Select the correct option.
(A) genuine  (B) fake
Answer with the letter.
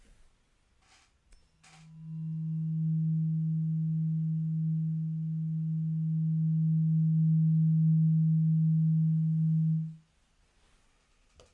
A